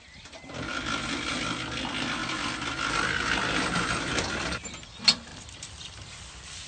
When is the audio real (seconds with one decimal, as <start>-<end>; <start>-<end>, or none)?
0.0-2.2; 4.1-5.3